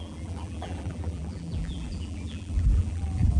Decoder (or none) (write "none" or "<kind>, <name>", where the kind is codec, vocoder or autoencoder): vocoder, BigVGAN v2